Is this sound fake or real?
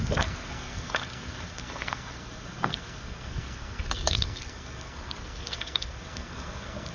fake